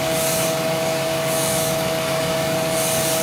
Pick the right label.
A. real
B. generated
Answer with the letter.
B